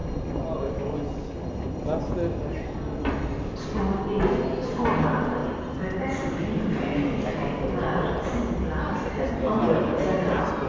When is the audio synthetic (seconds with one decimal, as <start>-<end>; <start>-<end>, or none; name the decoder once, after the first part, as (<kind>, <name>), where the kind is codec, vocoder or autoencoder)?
none